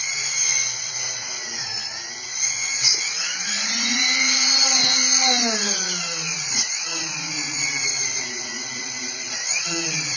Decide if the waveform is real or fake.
fake